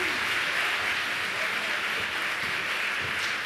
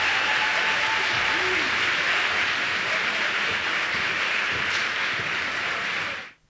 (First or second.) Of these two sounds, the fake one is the second